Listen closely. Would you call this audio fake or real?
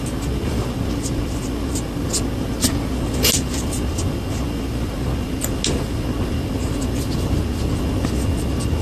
real